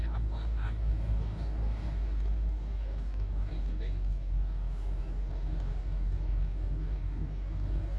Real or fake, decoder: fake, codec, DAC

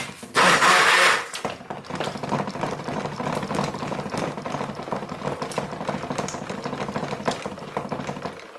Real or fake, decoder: real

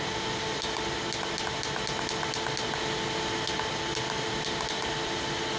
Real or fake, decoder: real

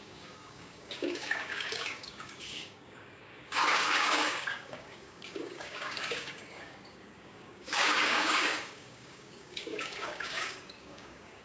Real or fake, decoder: fake, codec, DAC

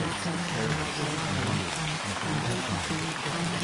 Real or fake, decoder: fake, codec, DAC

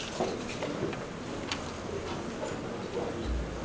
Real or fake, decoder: real